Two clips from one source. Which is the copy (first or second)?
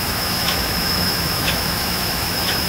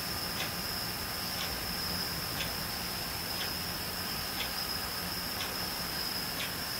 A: first